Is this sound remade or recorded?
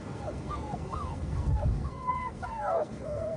remade